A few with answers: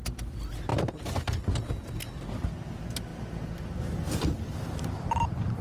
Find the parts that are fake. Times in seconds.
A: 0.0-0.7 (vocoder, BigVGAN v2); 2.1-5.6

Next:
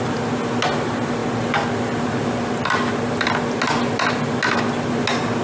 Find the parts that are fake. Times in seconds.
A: none

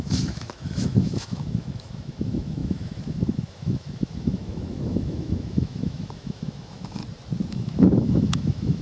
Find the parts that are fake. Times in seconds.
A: 0.0-7.0 (autoencoder, DAC-VAE); 7.5-8.8

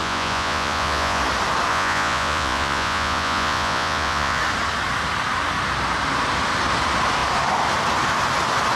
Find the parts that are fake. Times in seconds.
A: 0.0-1.2 (vocoder, Vocos); 1.7-4.4

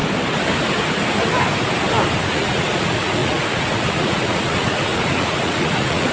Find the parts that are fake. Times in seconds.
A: 2.2-6.1 (vocoder, Vocos)

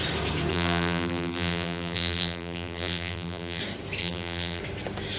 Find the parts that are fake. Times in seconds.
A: 0.5-3.6 (vocoder, BigVGAN v2); 4.0-4.6